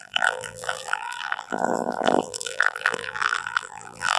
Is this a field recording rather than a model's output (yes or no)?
no